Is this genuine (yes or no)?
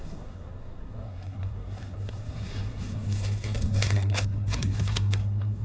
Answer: no